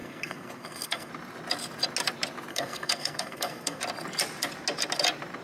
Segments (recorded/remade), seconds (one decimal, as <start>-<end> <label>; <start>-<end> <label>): 0.0-1.1 remade; 1.1-2.5 recorded; 2.5-3.8 remade; 3.8-5.4 recorded